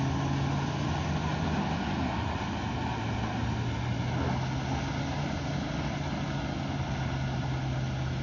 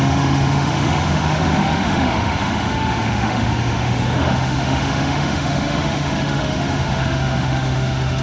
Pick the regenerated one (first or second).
second